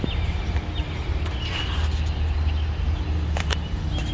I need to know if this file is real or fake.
real